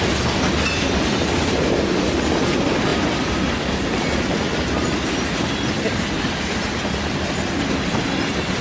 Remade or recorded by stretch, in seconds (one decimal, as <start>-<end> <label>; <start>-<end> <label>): 0.0-8.6 recorded